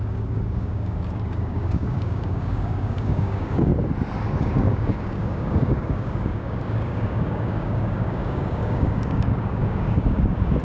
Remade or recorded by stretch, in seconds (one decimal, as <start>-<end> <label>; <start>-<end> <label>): 0.0-3.7 remade; 3.7-4.4 recorded; 4.4-10.6 remade